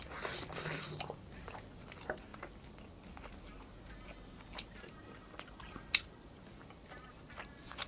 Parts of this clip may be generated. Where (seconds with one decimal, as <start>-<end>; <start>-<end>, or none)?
none